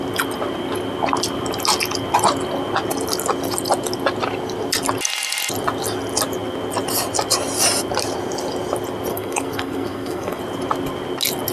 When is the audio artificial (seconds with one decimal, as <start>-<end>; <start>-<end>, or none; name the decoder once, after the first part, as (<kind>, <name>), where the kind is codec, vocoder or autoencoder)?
9.1-10.4 (codec, SNAC)